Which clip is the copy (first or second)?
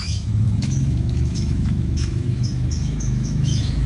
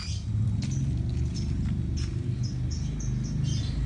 first